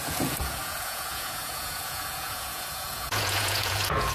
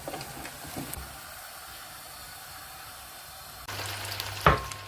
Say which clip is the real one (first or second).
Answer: second